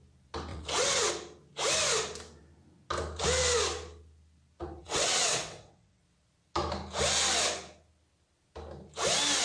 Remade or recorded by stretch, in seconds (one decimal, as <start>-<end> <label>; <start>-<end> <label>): 0.0-0.5 recorded; 0.5-1.1 remade; 1.1-4.8 recorded; 4.8-6.0 remade; 6.0-9.4 recorded